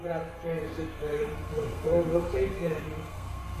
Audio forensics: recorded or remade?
remade